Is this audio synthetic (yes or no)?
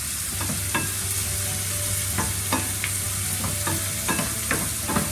no